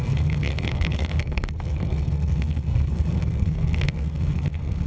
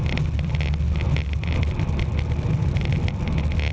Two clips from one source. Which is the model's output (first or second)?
first